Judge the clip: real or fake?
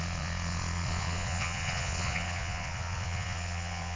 fake